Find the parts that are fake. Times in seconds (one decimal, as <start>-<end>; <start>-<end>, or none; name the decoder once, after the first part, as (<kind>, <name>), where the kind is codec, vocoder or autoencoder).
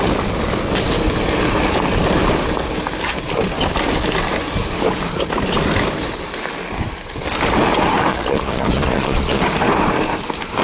8.1-9.4 (vocoder, Vocos)